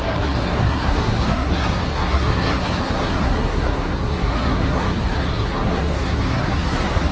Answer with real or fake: fake